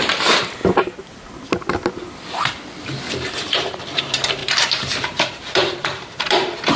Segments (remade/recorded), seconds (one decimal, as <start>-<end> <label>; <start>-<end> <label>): 0.0-0.6 remade; 0.6-3.1 recorded; 3.1-6.8 remade

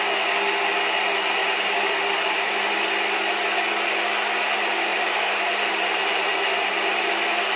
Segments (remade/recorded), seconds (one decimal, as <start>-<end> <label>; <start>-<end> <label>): 0.0-1.4 recorded; 1.4-2.5 remade; 2.5-4.9 recorded; 4.9-7.1 remade; 7.1-7.6 recorded

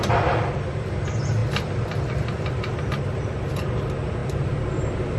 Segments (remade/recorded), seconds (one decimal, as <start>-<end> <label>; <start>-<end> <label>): 0.0-1.4 recorded; 1.4-2.8 remade; 2.8-4.2 recorded; 4.2-5.2 remade

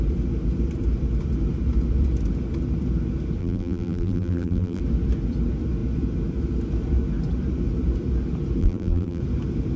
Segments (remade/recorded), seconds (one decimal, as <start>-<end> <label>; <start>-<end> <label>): 0.0-3.4 recorded; 3.4-4.8 remade; 4.8-8.6 recorded; 8.6-9.2 remade; 9.2-9.8 recorded

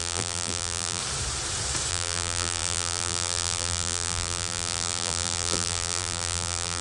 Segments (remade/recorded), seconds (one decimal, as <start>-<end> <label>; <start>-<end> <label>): 0.0-1.0 remade; 1.0-1.9 recorded; 1.9-6.8 remade